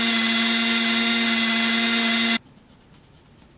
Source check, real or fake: real